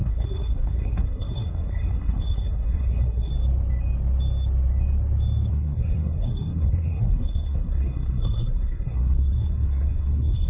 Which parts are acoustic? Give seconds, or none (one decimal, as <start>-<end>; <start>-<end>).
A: 3.3-5.5